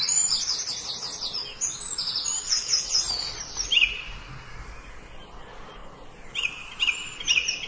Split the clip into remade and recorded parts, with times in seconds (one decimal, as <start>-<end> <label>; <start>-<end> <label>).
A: 0.0-7.7 recorded